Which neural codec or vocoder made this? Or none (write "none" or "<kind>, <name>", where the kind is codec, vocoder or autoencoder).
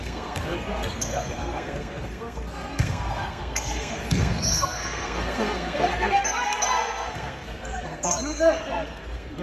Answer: codec, SNAC